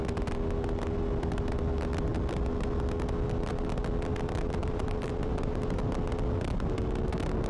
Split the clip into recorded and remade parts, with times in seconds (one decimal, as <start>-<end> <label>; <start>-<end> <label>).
0.0-4.6 recorded; 4.6-5.8 remade; 5.8-7.5 recorded